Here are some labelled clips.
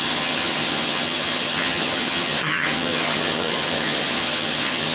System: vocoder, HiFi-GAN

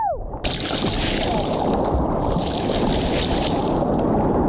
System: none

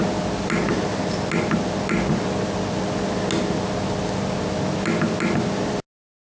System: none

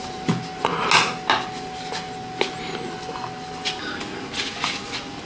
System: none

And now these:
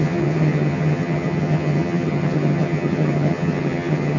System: vocoder, HiFi-GAN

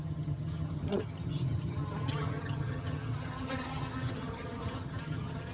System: vocoder, HiFi-GAN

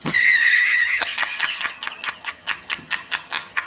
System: vocoder, HiFi-GAN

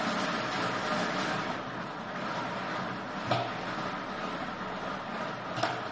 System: none